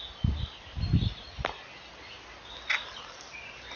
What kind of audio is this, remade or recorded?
recorded